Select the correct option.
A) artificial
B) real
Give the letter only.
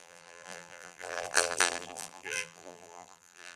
A